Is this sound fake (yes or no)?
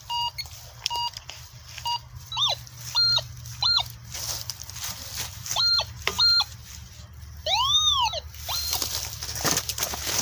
yes